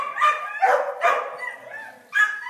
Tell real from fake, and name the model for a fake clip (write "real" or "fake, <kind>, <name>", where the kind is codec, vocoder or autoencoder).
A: real